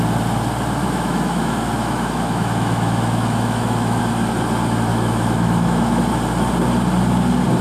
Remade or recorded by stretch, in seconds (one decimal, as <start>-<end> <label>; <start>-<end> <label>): 0.0-0.8 recorded; 0.8-4.0 remade; 4.0-4.9 recorded; 4.9-6.0 remade; 6.0-7.6 recorded